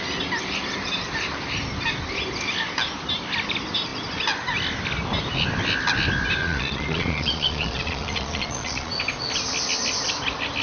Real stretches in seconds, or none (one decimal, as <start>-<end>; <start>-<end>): 0.0-6.4; 8.9-10.6